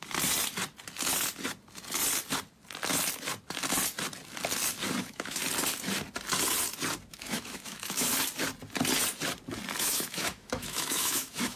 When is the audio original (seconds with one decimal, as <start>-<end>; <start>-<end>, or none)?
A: 0.0-5.0; 5.4-7.1; 8.1-9.8